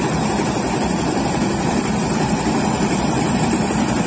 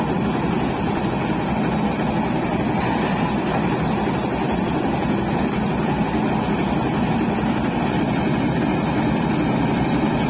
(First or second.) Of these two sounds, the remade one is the first